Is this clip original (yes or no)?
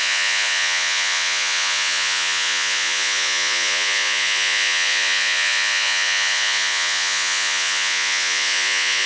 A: no